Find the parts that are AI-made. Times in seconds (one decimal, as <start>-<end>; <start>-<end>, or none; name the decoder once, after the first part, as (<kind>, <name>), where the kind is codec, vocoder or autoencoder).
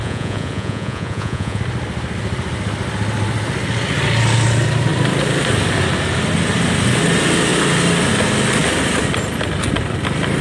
0.0-1.6 (vocoder, Vocos)